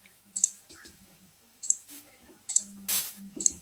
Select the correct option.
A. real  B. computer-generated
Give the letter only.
B